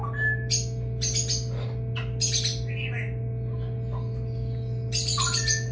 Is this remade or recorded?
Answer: recorded